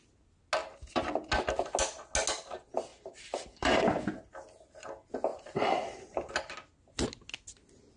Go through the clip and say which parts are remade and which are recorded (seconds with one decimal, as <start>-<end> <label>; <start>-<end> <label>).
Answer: 0.0-0.6 recorded; 0.6-1.3 remade; 1.3-2.9 recorded; 2.9-3.8 remade; 3.8-5.3 recorded; 5.3-6.3 remade; 6.3-8.0 recorded